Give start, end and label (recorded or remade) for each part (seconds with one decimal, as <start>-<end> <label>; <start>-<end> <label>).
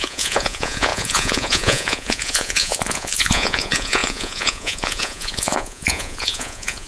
0.0-6.9 remade